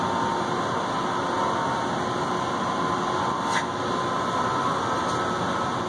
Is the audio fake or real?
real